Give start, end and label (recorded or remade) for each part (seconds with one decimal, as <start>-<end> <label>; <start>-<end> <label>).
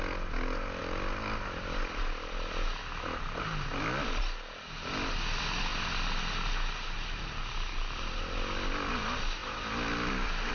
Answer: 0.0-9.4 recorded; 9.4-10.5 remade